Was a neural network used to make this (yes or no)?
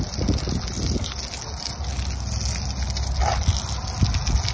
no